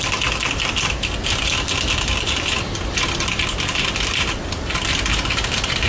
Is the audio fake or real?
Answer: real